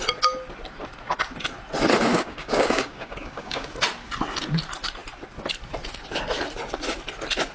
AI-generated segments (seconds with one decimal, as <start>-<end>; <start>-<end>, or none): 2.1-3.7